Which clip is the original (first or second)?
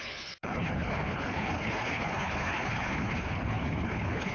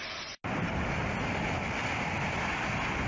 second